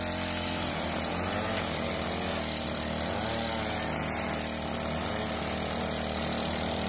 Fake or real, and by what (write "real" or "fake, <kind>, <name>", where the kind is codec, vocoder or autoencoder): real